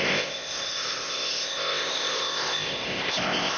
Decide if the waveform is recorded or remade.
remade